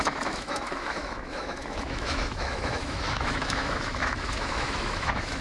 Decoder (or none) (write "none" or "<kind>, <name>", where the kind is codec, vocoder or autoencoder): autoencoder, DAC-VAE